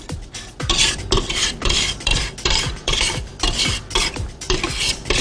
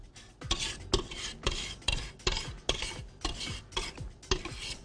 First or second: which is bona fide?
second